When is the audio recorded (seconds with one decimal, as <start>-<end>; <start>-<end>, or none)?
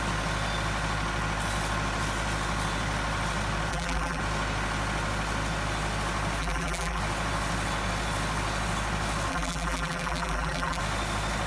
0.0-3.7; 4.2-6.4; 7.0-9.3; 10.8-11.5